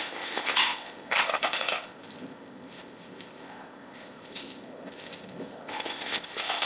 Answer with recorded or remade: remade